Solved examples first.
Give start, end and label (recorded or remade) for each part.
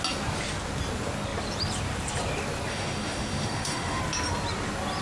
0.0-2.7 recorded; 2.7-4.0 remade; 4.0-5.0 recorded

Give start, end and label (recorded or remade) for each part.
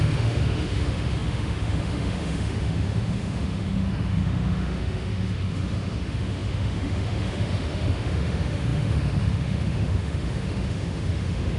0.0-11.6 remade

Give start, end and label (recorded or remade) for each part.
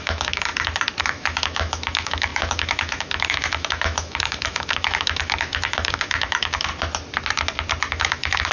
0.0-0.5 remade; 0.5-1.0 recorded; 1.0-6.7 remade; 6.7-7.9 recorded; 7.9-8.5 remade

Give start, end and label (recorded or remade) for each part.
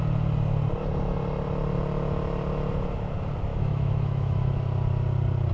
0.0-3.5 recorded; 3.5-4.5 remade; 4.5-5.5 recorded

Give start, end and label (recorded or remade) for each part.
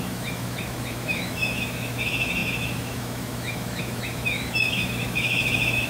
0.0-5.9 remade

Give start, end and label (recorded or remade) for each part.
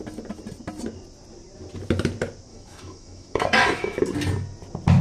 0.0-2.5 recorded; 2.5-4.0 remade; 4.0-5.0 recorded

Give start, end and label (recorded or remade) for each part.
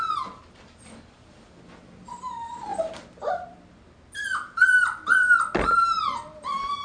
0.0-6.8 recorded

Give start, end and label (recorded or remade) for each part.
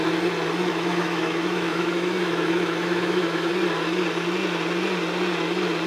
0.0-0.7 recorded; 0.7-3.5 remade; 3.5-5.9 recorded